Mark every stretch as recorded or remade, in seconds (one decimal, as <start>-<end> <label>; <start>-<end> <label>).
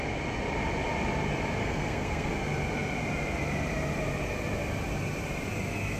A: 0.0-1.6 recorded; 1.6-2.3 remade; 2.3-6.0 recorded